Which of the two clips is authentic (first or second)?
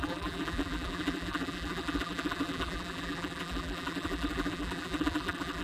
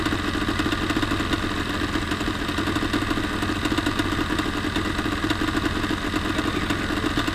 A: second